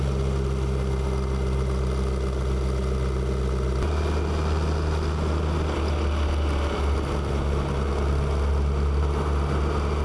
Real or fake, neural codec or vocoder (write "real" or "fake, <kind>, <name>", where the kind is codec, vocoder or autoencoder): real